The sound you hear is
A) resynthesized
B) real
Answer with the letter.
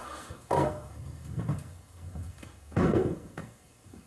A